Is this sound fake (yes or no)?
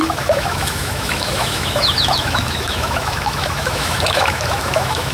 yes